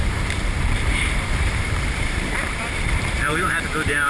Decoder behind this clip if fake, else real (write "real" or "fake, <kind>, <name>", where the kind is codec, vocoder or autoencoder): fake, vocoder, BigVGAN v2